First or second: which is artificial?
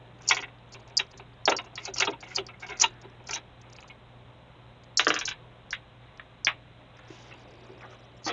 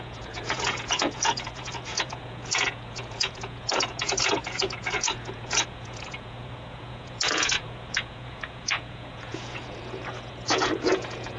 second